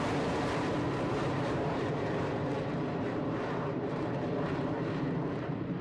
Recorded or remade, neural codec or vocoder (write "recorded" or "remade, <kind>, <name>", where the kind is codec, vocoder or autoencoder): remade, vocoder, BigVGAN v2